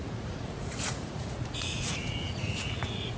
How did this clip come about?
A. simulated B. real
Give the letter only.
A